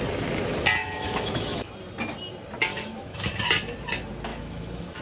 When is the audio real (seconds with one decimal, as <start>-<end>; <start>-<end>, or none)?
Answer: 0.0-0.8; 1.7-2.7; 3.3-4.3

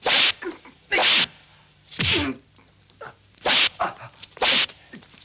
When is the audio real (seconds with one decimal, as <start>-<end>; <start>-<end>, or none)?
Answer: 1.0-3.5

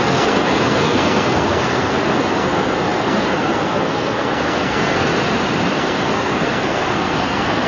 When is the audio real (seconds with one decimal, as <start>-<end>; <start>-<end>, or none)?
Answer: 5.1-5.7

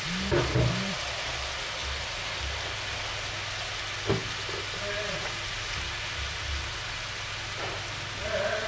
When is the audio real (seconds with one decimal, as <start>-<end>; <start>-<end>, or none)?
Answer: 0.0-8.7